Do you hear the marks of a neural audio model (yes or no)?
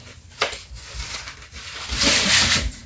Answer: yes